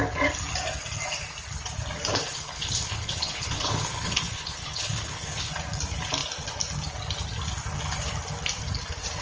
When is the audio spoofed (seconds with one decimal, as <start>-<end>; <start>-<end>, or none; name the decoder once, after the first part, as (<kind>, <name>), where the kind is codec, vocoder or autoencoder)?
2.1-5.5 (codec, HILCodec)